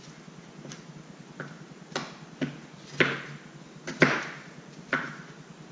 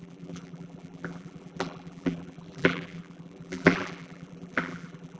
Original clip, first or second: first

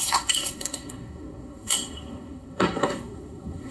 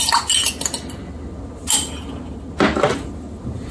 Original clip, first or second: second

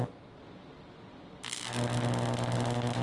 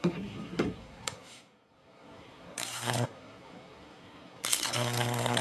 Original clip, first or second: first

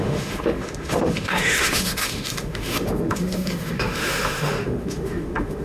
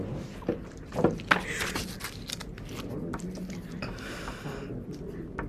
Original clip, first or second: second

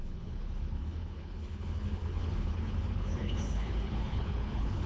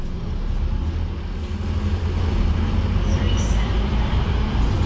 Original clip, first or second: second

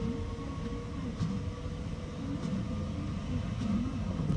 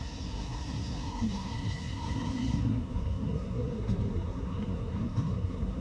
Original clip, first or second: first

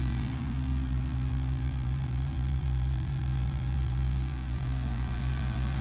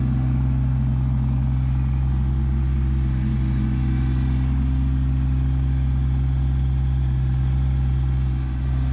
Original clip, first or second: second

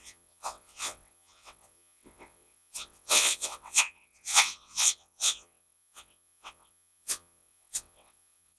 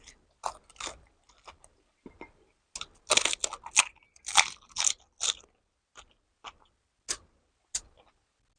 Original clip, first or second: second